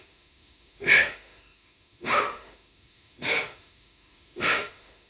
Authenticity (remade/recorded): remade